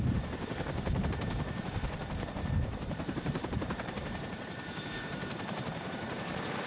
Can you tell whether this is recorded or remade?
remade